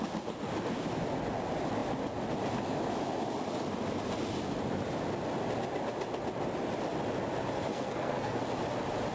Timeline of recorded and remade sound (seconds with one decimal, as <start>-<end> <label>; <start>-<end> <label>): 0.0-7.7 recorded; 7.7-8.4 remade; 8.4-9.1 recorded